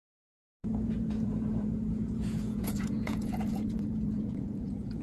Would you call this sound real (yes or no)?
no